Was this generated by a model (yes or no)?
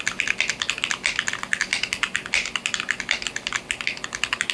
no